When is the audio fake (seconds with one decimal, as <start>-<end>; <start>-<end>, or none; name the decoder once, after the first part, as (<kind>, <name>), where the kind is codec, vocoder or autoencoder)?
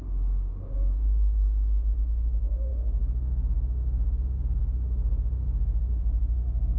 0.0-6.8 (autoencoder, DAC-VAE)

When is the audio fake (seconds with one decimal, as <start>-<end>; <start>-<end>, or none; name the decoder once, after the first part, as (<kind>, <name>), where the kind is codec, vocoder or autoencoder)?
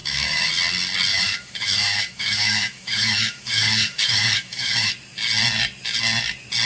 0.0-0.5 (autoencoder, DAC-VAE); 1.1-4.9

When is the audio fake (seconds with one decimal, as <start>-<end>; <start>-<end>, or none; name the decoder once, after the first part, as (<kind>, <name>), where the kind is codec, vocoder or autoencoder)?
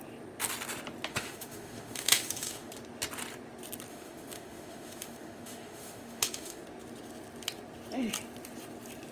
1.1-2.7 (autoencoder, DAC-VAE); 3.9-6.6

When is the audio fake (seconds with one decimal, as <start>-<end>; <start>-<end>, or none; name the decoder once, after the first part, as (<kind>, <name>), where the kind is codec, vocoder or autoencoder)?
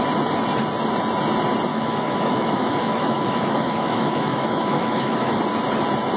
1.7-5.4 (autoencoder, DAC-VAE)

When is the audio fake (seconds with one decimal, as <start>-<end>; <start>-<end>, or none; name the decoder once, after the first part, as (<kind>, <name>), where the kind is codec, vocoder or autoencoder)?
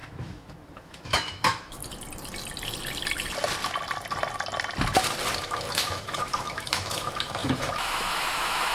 0.0-1.8 (autoencoder, DAC-VAE); 5.4-8.7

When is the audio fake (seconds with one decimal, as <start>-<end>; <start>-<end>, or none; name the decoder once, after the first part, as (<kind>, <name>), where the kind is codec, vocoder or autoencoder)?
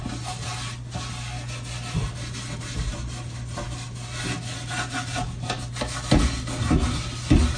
none